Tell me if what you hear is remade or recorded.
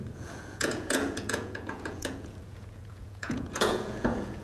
remade